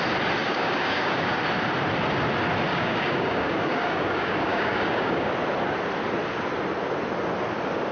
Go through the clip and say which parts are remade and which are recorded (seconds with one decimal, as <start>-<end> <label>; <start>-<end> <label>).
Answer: 0.0-0.4 recorded; 0.4-1.4 remade; 1.4-2.7 recorded; 2.7-5.3 remade; 5.3-7.9 recorded